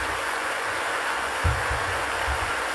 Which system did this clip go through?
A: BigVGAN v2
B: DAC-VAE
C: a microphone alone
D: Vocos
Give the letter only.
D